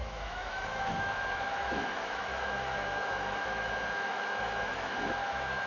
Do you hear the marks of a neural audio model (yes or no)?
yes